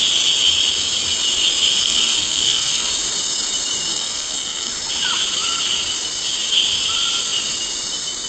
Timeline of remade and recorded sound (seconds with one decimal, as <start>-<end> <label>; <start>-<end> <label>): 0.0-1.8 recorded; 1.8-2.9 remade; 2.9-3.9 recorded; 3.9-4.7 remade; 4.7-8.3 recorded